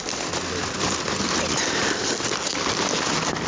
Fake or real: real